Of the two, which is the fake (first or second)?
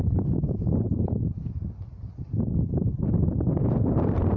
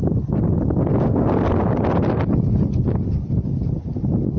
first